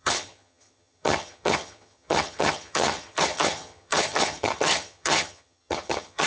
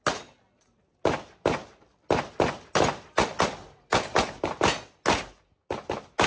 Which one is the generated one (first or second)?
first